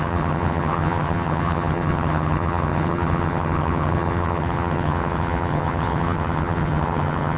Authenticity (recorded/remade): remade